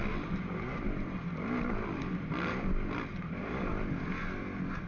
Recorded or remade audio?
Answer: recorded